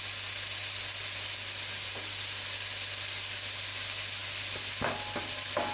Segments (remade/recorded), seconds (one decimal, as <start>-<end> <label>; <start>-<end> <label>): 0.0-5.7 recorded

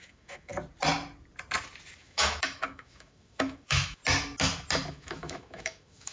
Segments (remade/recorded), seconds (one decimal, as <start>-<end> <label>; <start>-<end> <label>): 0.0-0.5 remade; 0.5-2.0 recorded; 2.0-4.0 remade; 4.0-4.9 recorded; 4.9-6.1 remade

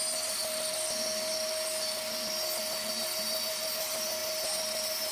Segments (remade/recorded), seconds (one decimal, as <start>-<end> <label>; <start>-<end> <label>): 0.0-5.1 recorded

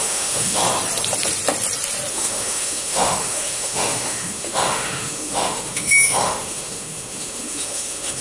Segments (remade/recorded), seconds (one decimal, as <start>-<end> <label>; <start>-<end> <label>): 0.0-0.6 remade; 0.6-2.1 recorded; 2.1-8.2 remade

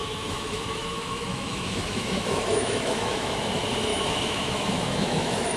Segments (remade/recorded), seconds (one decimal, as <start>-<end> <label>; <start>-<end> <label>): 0.0-3.4 remade; 3.4-3.9 recorded; 3.9-5.6 remade